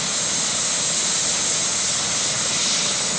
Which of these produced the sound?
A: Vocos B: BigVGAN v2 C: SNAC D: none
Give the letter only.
D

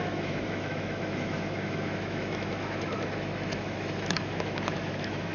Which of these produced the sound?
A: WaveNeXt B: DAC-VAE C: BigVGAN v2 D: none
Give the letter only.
B